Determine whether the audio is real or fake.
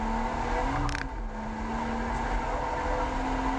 real